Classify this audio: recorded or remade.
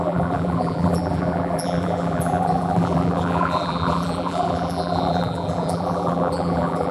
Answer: remade